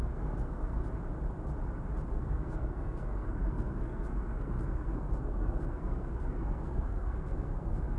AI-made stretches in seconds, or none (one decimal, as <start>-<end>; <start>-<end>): 0.0-0.8; 2.1-8.0